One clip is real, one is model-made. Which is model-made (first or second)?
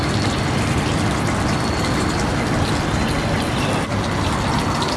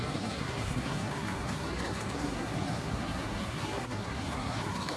second